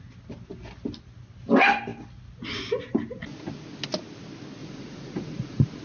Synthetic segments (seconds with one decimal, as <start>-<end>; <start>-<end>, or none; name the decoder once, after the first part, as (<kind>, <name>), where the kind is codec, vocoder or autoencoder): 4.6-5.8 (vocoder, Vocos)